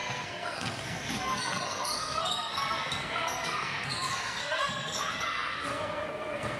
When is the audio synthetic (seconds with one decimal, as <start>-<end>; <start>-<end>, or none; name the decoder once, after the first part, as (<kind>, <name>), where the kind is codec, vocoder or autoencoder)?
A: 0.0-6.6 (codec, SNAC)